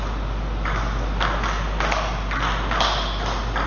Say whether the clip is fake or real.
real